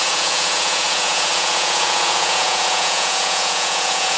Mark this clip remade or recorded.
remade